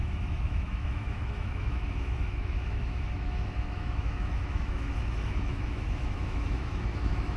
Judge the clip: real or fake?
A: fake